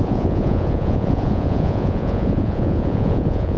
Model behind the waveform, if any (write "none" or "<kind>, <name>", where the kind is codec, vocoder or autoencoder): vocoder, Vocos